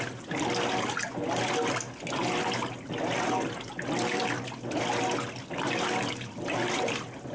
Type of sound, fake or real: real